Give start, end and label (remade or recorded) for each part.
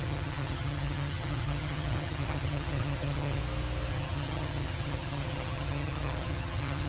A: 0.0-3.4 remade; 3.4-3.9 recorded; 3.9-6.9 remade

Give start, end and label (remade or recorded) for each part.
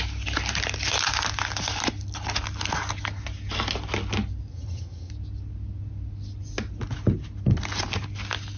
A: 0.0-4.5 recorded; 4.5-5.1 remade; 5.1-8.6 recorded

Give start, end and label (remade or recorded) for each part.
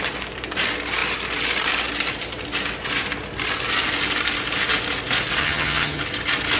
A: 0.0-5.4 recorded; 5.4-6.0 remade; 6.0-6.6 recorded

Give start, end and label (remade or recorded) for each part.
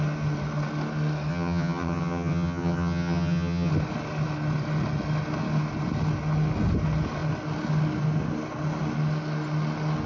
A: 0.0-1.3 recorded; 1.3-3.7 remade; 3.7-10.1 recorded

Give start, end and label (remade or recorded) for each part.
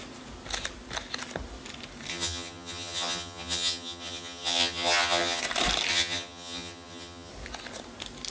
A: 0.0-2.1 recorded; 2.1-5.4 remade; 5.4-5.9 recorded; 5.9-7.3 remade; 7.3-8.3 recorded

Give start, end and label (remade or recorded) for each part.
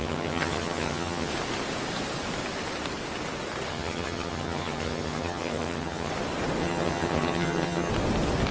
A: 0.0-1.3 remade; 1.3-3.7 recorded; 3.7-6.1 remade; 6.1-6.6 recorded; 6.6-7.9 remade; 7.9-8.5 recorded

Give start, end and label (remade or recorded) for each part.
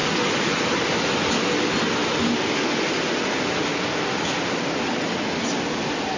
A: 0.0-6.2 recorded